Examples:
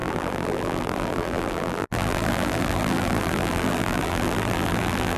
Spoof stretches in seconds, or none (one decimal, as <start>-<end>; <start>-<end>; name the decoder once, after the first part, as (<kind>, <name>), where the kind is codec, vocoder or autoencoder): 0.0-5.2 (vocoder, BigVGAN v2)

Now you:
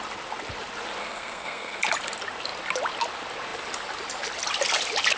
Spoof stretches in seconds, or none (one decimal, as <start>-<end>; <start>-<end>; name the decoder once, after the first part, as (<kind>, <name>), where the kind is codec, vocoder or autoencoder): 1.0-1.8 (codec, SNAC)

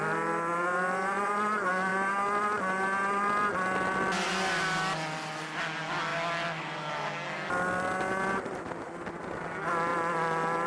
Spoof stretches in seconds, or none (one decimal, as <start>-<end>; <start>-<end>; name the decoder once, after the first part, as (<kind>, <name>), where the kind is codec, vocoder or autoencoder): none

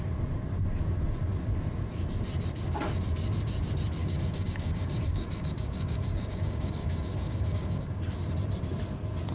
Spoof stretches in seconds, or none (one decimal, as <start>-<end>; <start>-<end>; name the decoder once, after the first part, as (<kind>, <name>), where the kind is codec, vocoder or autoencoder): 4.0-8.0 (codec, DAC)

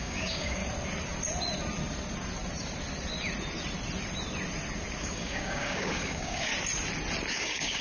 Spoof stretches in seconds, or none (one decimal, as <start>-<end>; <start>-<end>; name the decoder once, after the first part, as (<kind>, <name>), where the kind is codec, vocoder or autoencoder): 0.0-0.6 (codec, DAC); 5.0-6.5; 7.3-7.8

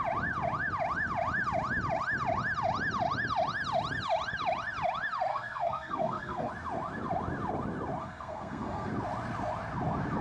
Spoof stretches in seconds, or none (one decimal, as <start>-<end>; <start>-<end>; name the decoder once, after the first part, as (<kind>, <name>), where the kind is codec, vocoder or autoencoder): 5.3-6.5 (codec, SNAC); 8.0-8.9